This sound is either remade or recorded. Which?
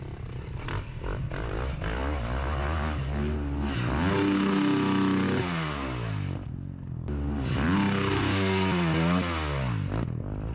recorded